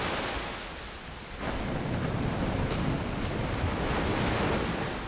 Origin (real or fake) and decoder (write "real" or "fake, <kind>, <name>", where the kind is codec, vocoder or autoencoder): real